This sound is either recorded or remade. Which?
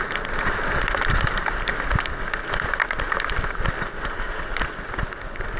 recorded